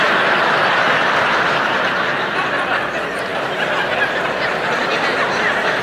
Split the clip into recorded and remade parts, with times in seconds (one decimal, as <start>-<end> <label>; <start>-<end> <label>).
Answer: 0.0-5.8 recorded